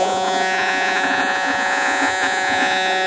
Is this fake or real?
fake